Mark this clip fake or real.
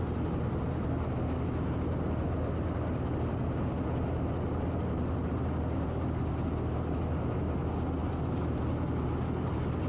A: real